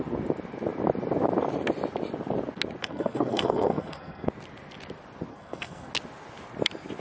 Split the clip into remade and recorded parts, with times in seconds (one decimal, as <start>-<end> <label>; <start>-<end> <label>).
0.0-2.8 recorded; 2.8-4.3 remade; 4.3-5.3 recorded; 5.3-5.9 remade; 5.9-7.0 recorded

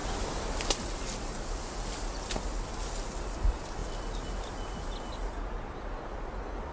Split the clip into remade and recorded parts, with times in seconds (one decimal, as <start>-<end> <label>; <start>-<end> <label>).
0.0-6.7 recorded

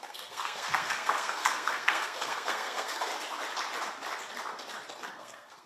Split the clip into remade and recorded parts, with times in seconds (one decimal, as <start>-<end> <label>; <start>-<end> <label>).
0.0-3.1 remade; 3.1-5.1 recorded; 5.1-5.7 remade

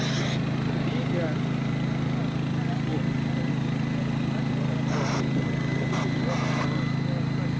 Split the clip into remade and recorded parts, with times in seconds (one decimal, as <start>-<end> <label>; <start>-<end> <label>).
0.0-7.6 recorded

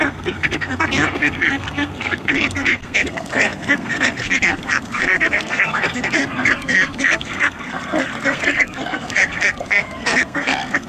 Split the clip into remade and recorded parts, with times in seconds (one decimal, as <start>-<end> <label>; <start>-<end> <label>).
0.0-10.9 remade